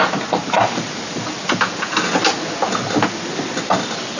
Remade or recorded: recorded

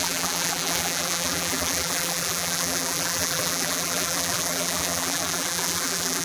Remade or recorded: remade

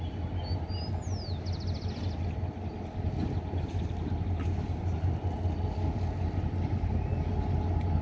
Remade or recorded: recorded